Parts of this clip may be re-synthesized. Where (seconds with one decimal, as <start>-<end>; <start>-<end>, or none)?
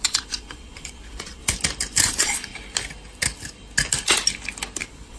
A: 0.0-1.4; 2.0-2.5; 4.8-5.2